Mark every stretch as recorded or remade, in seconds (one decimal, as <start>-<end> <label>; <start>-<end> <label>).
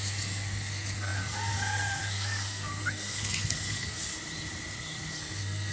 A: 0.0-4.1 remade; 4.1-5.2 recorded; 5.2-5.7 remade